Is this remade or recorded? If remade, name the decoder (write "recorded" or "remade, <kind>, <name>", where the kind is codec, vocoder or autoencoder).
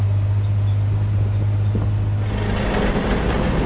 recorded